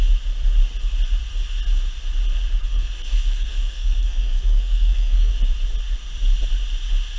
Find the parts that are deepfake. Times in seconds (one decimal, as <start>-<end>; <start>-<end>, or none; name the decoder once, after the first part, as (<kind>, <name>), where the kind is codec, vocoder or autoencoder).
2.6-5.3 (codec, SNAC)